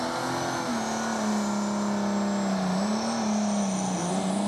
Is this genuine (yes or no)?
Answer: yes